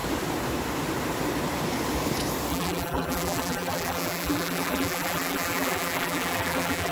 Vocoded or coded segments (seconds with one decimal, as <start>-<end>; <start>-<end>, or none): 2.5-6.9